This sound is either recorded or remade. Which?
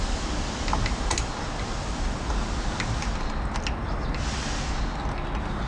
recorded